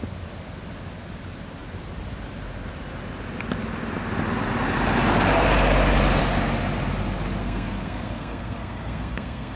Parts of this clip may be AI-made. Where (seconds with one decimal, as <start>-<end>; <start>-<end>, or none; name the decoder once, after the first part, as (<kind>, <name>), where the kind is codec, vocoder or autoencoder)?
7.4-9.6 (codec, SNAC)